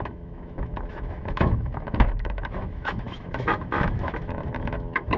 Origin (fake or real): fake